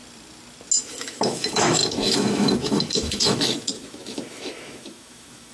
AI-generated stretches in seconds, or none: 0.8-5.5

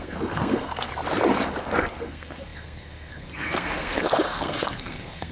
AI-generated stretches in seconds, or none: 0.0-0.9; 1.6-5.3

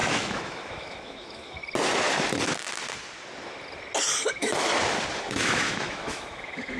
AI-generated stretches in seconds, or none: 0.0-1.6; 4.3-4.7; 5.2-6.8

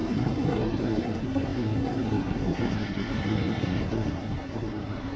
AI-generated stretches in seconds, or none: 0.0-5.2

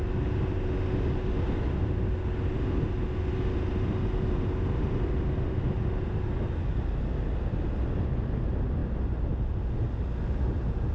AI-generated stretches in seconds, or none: none